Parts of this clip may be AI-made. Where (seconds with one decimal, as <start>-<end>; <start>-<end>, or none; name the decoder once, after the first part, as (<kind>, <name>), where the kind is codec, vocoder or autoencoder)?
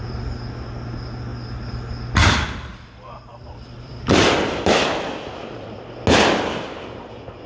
2.7-5.8 (vocoder, BigVGAN v2)